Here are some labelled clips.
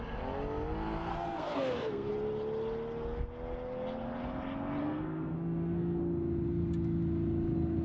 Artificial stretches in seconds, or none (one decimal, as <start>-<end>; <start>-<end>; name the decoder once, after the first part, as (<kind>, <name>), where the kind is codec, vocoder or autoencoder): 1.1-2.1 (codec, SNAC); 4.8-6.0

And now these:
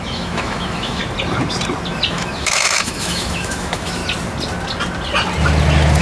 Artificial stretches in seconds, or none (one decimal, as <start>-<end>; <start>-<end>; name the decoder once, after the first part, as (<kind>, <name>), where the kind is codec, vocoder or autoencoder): 0.0-1.0 (autoencoder, DAC-VAE); 2.1-4.0

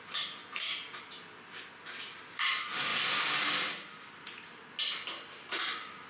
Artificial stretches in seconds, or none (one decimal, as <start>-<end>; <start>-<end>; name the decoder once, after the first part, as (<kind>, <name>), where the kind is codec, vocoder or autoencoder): 0.0-0.4 (vocoder, BigVGAN v2); 1.0-2.9; 5.5-6.1

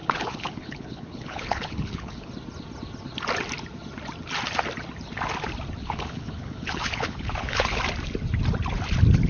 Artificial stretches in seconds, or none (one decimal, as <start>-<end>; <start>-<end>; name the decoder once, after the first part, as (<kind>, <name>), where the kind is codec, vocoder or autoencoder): 0.0-2.3 (codec, HILCodec); 5.8-7.8